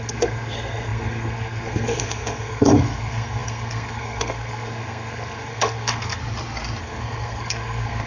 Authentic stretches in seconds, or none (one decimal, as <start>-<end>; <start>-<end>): 6.2-6.8